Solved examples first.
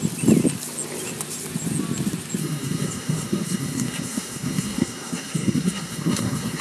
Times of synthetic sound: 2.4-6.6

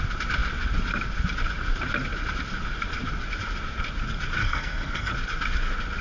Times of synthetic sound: 4.4-5.1